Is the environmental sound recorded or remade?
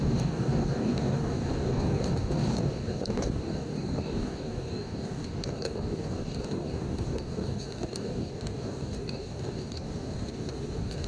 remade